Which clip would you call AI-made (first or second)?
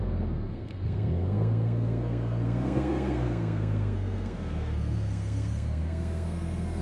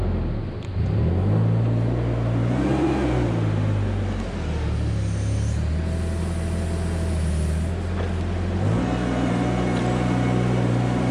first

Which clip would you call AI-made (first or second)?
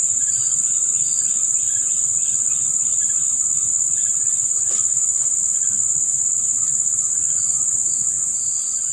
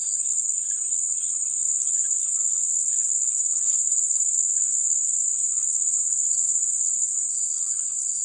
second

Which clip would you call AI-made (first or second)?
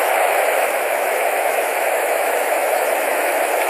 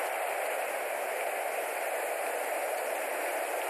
first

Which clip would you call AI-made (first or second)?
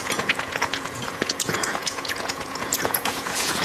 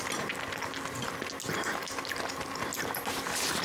first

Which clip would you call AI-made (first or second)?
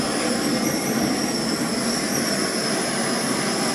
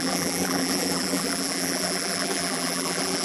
second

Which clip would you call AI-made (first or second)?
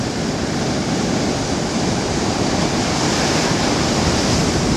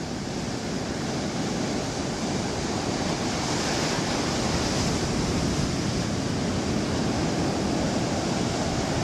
first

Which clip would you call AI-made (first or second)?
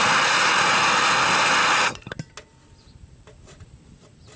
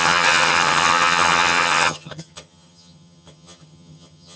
second